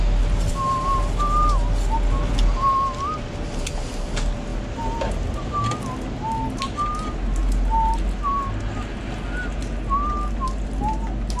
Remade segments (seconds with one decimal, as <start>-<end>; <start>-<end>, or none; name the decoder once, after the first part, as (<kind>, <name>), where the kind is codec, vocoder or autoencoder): none